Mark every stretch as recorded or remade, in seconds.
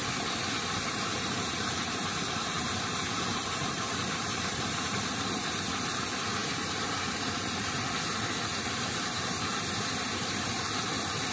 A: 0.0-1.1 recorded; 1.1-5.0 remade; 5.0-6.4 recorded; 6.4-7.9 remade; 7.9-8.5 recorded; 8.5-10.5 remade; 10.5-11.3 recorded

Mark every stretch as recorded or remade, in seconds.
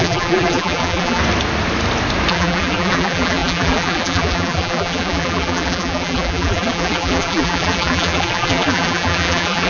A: 0.0-1.2 remade; 1.2-2.3 recorded; 2.3-9.7 remade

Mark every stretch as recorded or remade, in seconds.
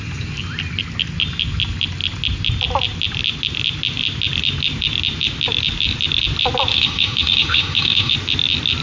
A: 0.0-6.7 recorded; 6.7-8.1 remade; 8.1-8.8 recorded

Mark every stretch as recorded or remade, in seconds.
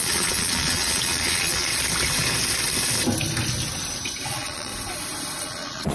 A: 0.0-1.7 remade; 1.7-4.3 recorded; 4.3-4.7 remade; 4.7-5.4 recorded; 5.4-5.9 remade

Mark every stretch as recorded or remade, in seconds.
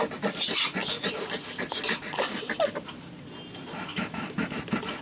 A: 0.0-3.9 recorded; 3.9-4.6 remade; 4.6-5.0 recorded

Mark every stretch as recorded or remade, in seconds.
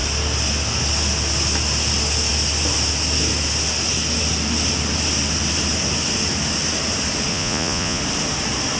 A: 0.0-7.3 recorded; 7.3-8.0 remade; 8.0-8.8 recorded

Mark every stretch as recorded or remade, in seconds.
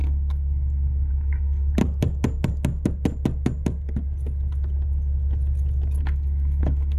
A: 0.0-1.8 remade; 1.8-6.0 recorded; 6.0-7.0 remade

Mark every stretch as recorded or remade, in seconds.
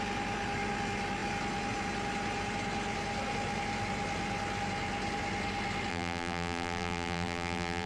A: 0.0-5.9 recorded; 5.9-7.9 remade